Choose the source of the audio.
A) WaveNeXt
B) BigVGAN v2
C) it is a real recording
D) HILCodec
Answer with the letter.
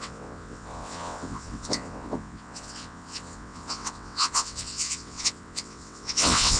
A